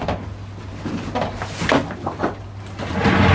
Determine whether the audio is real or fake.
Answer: real